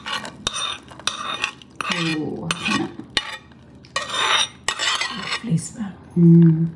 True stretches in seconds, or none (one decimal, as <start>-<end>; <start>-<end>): 0.0-6.8